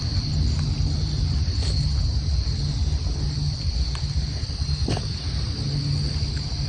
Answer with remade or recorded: recorded